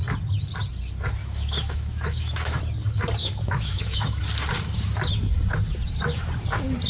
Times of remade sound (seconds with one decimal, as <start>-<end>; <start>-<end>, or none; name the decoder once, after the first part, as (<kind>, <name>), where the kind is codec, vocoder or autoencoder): 1.2-2.6 (autoencoder, DAC-VAE); 3.2-4.2